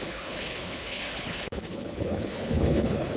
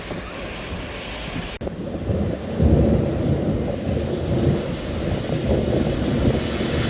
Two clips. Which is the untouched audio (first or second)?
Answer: second